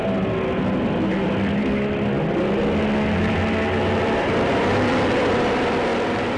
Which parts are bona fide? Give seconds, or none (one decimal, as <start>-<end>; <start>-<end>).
0.0-3.8

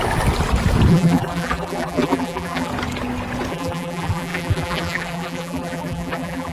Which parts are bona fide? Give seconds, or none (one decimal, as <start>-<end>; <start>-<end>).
0.0-0.9; 2.7-3.5

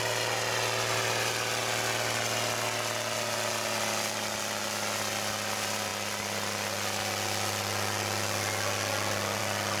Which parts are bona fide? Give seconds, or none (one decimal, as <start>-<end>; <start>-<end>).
0.0-9.8

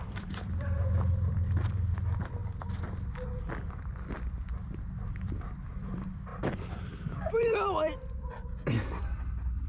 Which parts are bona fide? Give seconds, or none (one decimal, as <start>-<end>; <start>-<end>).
2.4-3.7

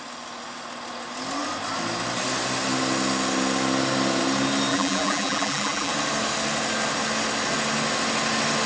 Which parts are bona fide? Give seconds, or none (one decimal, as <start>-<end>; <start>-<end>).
0.0-4.7; 5.9-8.7

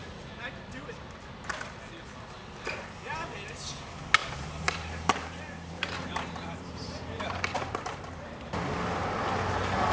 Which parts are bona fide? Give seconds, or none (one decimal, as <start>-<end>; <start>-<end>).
0.0-4.2; 8.5-9.9

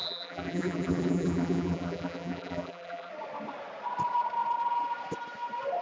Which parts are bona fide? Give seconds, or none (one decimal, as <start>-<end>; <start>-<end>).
3.1-5.8

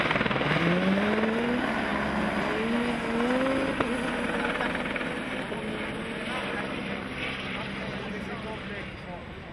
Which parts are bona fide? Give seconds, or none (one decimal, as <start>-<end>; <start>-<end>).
0.0-6.4; 7.6-9.5